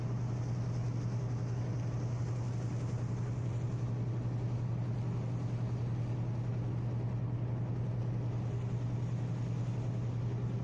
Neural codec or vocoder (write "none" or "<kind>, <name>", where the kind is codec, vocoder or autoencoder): none